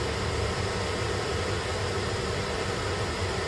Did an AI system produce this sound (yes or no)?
no